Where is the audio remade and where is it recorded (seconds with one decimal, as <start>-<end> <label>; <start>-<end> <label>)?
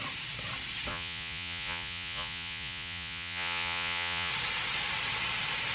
0.0-0.9 recorded; 0.9-4.3 remade; 4.3-5.7 recorded